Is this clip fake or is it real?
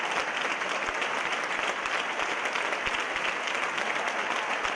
real